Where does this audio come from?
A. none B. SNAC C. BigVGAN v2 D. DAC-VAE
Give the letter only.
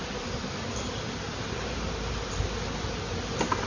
A